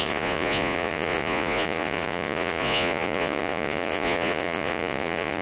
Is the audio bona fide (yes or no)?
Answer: no